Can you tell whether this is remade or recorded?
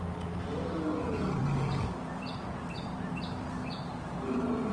recorded